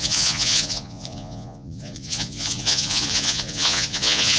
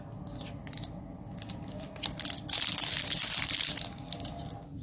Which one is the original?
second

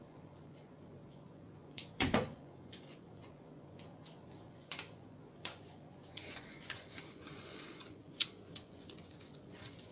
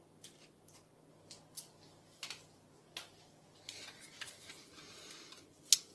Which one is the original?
second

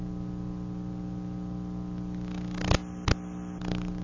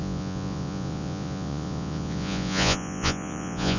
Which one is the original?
first